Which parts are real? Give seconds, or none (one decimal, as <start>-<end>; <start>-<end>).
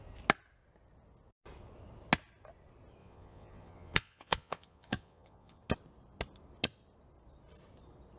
0.0-3.0; 5.6-8.2